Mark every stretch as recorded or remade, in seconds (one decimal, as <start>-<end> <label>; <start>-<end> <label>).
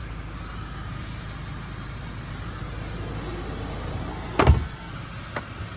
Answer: 0.0-4.1 recorded; 4.1-4.9 remade; 4.9-5.8 recorded